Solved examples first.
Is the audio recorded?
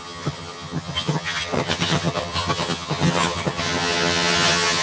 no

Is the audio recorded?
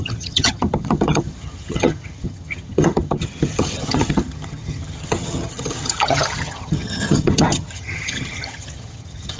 no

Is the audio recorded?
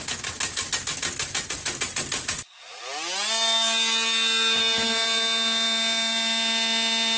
yes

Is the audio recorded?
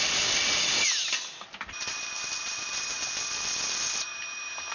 yes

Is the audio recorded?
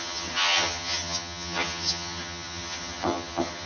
no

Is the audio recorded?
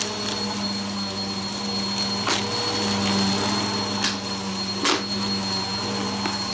yes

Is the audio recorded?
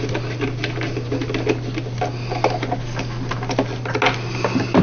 yes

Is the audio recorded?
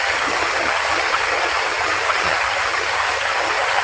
no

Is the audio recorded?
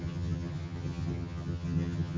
no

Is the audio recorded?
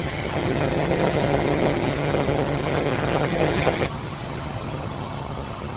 no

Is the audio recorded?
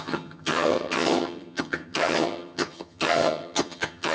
no